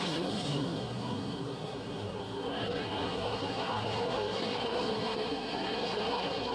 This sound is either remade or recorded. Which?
remade